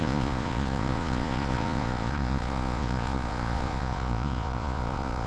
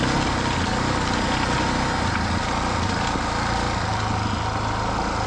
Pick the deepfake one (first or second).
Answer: first